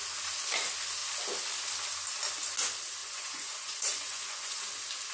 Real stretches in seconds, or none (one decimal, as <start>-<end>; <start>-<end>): 0.0-3.0; 4.6-5.1